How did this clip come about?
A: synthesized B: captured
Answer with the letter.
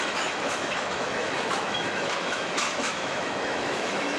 A